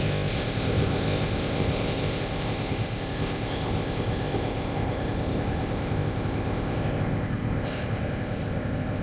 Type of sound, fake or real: fake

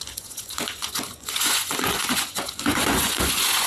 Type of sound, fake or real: fake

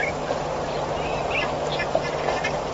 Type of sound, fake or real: real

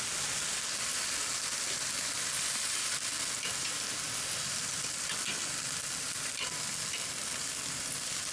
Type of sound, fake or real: real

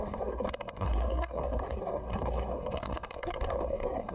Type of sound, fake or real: fake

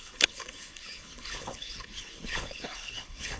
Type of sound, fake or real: fake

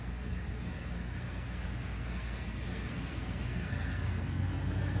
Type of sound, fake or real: fake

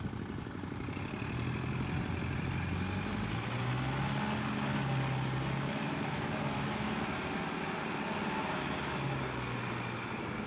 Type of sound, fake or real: real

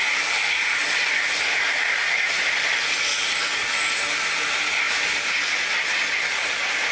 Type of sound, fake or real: real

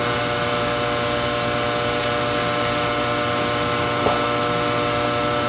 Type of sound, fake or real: real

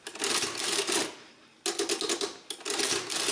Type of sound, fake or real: real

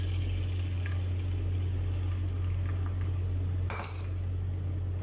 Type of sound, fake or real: real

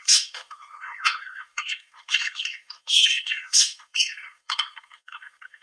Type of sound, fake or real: fake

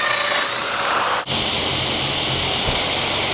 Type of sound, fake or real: real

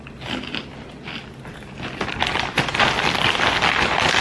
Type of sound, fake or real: real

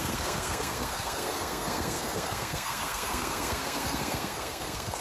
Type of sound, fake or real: fake